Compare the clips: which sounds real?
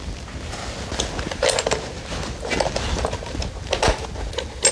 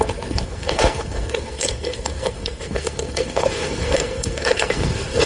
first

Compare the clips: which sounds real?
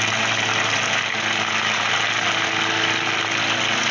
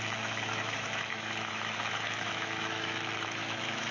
first